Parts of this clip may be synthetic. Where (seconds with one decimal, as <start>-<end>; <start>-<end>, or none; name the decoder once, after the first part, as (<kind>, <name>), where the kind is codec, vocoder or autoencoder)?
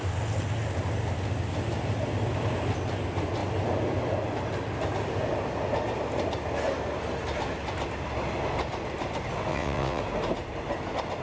9.5-10.0 (vocoder, WaveNeXt)